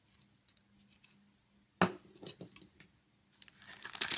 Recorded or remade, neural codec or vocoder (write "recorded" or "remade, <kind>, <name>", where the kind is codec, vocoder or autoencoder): recorded